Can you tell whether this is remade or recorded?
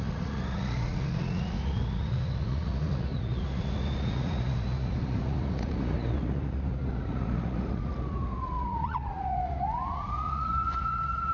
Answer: remade